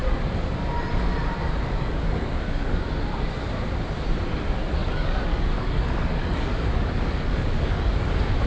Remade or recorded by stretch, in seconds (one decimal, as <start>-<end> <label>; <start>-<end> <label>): 0.0-1.4 recorded; 1.4-2.8 remade; 2.8-4.8 recorded; 4.8-8.1 remade; 8.1-8.5 recorded